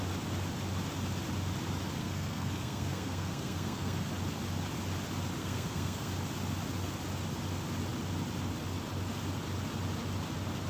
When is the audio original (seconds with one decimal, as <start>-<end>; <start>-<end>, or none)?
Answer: 0.0-2.0; 4.1-5.4; 6.1-10.7